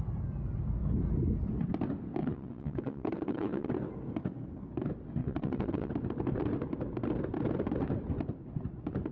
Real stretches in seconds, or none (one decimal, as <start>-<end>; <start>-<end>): 0.0-2.2; 3.7-5.2; 5.9-9.1